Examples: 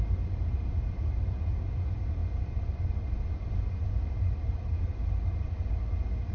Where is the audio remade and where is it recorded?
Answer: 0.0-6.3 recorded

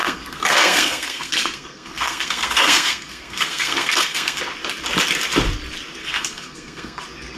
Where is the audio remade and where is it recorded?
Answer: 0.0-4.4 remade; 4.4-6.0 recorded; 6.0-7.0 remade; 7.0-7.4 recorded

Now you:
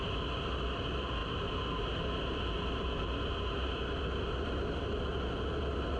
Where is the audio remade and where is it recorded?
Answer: 0.0-6.0 recorded

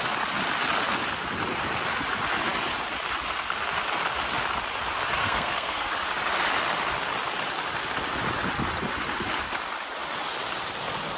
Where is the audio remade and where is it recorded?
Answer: 0.0-5.2 recorded; 5.2-5.9 remade; 5.9-11.2 recorded

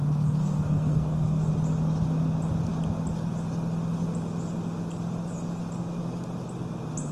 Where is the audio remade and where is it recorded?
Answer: 0.0-0.4 recorded; 0.4-1.5 remade; 1.5-7.1 recorded

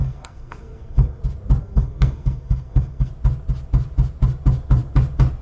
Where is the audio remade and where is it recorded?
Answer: 0.0-1.2 remade; 1.2-1.6 recorded; 1.6-3.1 remade; 3.1-5.4 recorded

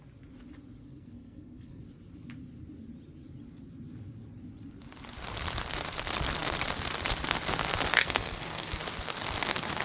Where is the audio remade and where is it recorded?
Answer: 0.0-0.8 recorded; 0.8-1.8 remade; 1.8-7.9 recorded; 7.9-8.8 remade; 8.8-9.8 recorded